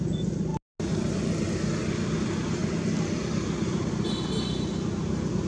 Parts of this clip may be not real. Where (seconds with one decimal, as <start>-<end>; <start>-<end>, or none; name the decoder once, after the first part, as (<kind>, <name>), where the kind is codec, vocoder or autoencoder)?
none